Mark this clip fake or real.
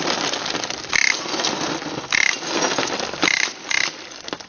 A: real